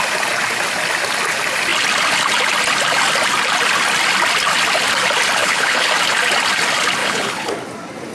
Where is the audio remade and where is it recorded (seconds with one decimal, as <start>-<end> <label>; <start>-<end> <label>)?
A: 0.0-5.4 recorded; 5.4-5.9 remade; 5.9-7.0 recorded; 7.0-7.5 remade; 7.5-8.1 recorded